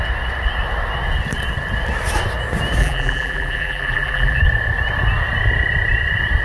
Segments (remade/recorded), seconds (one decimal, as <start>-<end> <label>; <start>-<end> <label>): 0.0-2.8 recorded; 2.8-4.4 remade; 4.4-6.4 recorded